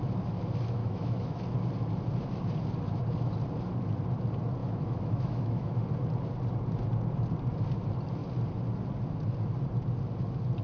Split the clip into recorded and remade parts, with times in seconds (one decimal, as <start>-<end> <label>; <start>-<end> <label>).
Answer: 0.0-0.8 recorded; 0.8-1.4 remade; 1.4-4.6 recorded; 4.6-5.8 remade; 5.8-10.6 recorded

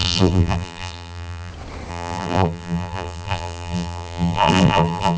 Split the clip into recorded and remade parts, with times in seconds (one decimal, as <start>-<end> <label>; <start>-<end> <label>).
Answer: 0.0-1.5 remade; 1.5-1.9 recorded; 1.9-5.2 remade